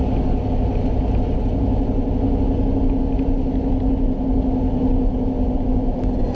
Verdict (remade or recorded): recorded